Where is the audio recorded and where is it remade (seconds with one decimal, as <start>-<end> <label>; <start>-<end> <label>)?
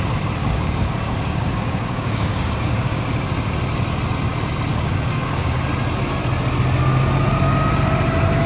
0.0-0.4 recorded; 0.4-3.0 remade; 3.0-4.7 recorded; 4.7-5.6 remade; 5.6-8.5 recorded